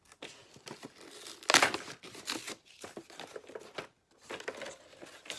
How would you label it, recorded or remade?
recorded